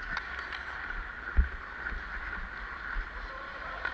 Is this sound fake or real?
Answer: real